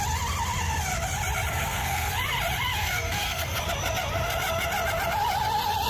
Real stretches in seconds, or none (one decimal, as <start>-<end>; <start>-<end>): 0.0-1.5; 2.1-2.8; 3.6-5.9